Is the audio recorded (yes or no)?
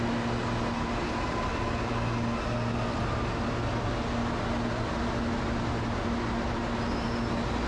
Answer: yes